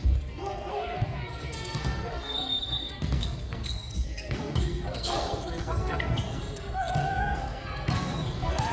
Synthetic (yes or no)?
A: yes